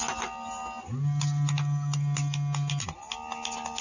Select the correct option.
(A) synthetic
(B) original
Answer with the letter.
B